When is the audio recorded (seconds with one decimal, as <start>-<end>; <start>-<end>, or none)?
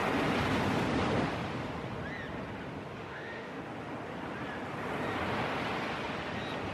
0.0-3.0; 3.6-6.7